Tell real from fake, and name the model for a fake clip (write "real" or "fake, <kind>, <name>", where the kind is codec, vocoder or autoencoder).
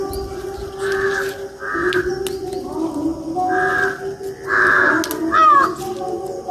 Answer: real